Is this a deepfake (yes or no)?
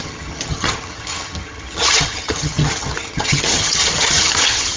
yes